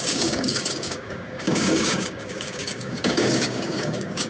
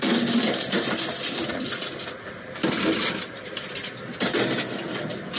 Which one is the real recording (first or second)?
second